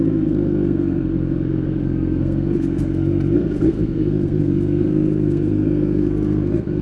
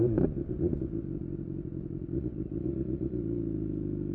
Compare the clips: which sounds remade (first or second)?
first